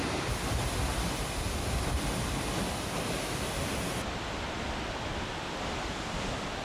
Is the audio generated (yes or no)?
no